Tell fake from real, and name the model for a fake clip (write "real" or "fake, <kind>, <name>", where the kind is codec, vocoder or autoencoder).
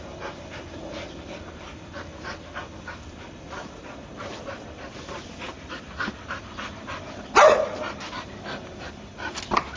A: real